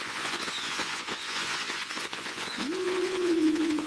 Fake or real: fake